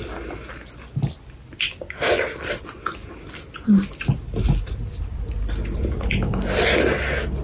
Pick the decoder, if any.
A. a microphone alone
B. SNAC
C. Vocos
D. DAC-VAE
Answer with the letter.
A